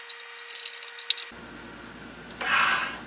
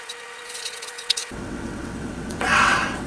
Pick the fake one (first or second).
second